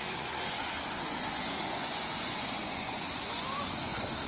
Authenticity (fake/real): fake